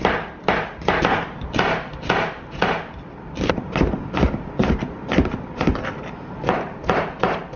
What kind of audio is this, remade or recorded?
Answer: recorded